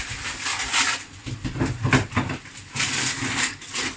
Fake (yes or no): no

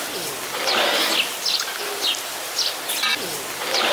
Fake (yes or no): no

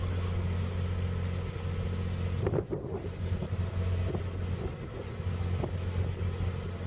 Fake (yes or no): no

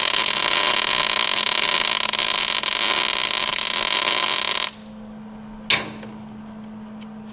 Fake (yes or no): no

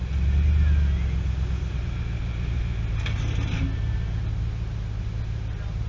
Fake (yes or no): no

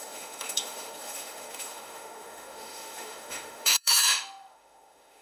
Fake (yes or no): yes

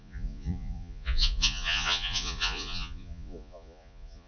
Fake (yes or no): yes